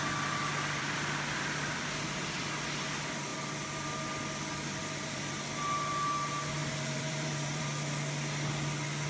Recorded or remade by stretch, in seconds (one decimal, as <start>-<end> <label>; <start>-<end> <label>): 0.0-4.8 recorded; 4.8-5.4 remade; 5.4-6.6 recorded; 6.6-7.6 remade; 7.6-9.1 recorded